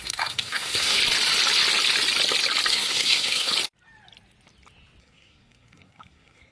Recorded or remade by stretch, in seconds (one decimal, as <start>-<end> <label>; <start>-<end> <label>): 0.0-1.0 remade; 1.0-2.7 recorded; 2.7-3.5 remade; 3.5-5.0 recorded; 5.0-6.5 remade